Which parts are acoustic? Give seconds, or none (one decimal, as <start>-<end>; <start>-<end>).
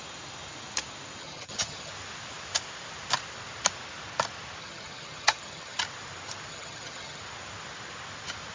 0.0-1.2; 1.9-4.6; 5.8-6.5; 7.2-8.5